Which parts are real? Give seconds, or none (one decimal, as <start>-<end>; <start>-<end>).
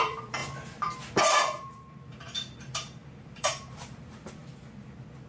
0.4-1.2; 4.4-5.3